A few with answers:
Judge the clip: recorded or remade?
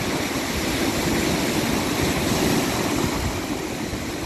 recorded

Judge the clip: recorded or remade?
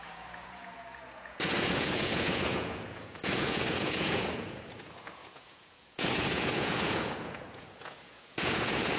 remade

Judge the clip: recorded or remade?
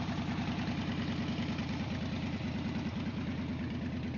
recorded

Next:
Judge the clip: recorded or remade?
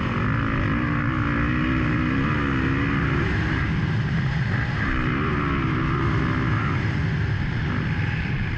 recorded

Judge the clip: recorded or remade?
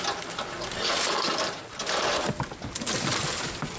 recorded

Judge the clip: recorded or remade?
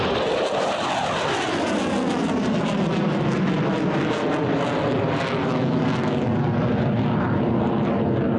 recorded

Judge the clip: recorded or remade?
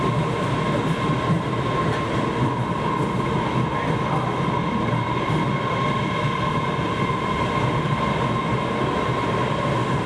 recorded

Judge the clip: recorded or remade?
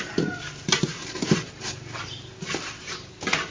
recorded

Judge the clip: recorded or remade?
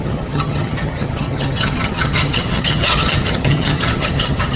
remade